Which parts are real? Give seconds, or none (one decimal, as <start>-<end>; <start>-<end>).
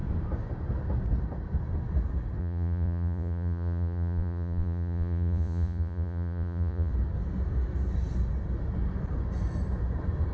0.0-2.4; 6.9-10.3